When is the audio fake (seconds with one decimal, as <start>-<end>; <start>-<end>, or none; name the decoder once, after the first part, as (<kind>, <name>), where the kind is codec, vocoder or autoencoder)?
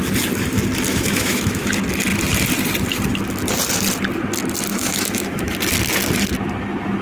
0.9-1.7 (autoencoder, DAC-VAE); 4.7-5.5